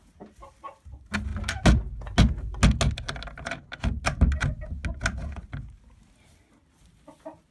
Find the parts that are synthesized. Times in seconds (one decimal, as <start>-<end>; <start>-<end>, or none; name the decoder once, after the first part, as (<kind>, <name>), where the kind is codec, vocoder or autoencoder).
none